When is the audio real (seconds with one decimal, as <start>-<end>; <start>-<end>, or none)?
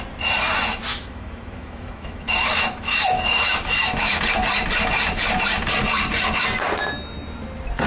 0.0-0.9; 4.2-7.9